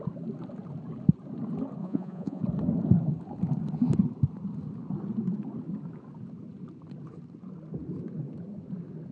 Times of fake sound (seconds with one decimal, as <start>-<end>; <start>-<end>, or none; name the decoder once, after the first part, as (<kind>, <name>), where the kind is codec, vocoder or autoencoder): 1.8-2.4 (vocoder, Vocos)